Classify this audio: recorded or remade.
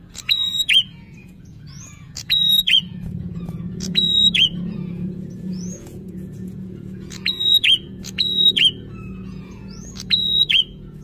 remade